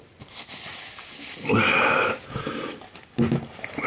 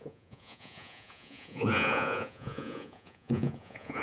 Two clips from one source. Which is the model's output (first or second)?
second